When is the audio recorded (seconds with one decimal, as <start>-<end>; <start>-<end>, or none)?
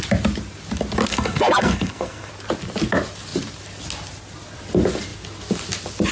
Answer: 0.0-1.1; 2.3-6.1